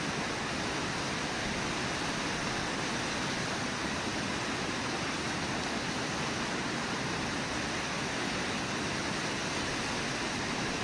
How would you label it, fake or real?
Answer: real